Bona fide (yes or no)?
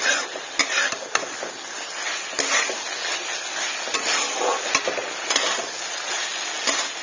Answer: yes